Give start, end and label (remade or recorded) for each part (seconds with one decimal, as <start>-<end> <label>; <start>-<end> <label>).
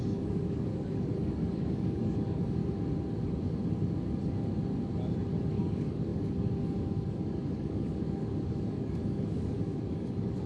0.0-2.6 remade; 2.6-5.5 recorded; 5.5-10.5 remade